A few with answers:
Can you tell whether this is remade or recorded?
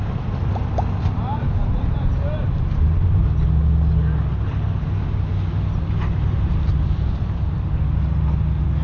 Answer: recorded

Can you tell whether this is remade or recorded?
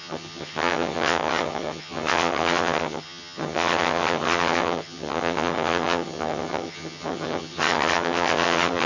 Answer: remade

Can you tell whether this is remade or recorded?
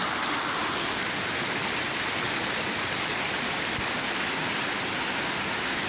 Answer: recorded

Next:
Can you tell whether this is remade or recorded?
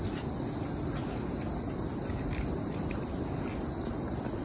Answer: recorded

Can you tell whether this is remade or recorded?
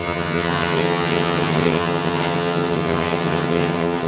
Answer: remade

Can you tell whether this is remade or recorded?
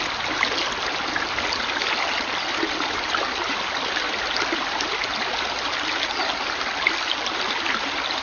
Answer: recorded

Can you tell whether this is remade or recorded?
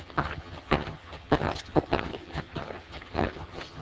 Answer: remade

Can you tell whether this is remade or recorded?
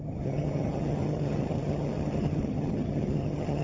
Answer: remade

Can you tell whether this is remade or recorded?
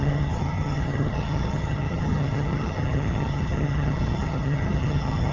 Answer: remade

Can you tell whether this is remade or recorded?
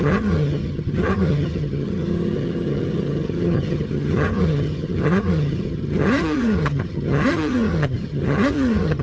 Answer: remade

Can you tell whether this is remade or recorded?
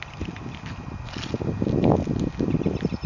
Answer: recorded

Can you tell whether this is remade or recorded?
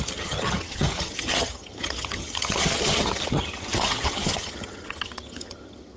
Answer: remade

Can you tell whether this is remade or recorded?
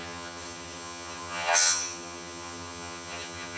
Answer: remade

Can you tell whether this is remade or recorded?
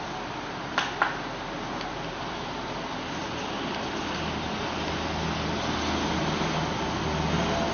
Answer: recorded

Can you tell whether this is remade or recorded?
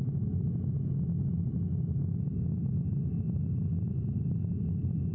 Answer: recorded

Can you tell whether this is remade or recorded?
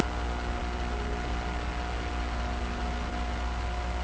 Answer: recorded